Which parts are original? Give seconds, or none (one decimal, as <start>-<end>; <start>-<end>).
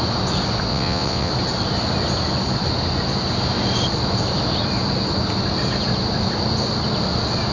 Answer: 0.0-0.7; 1.3-7.5